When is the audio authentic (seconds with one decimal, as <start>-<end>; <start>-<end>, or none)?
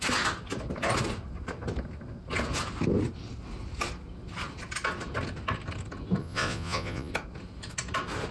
0.0-6.2; 7.1-8.3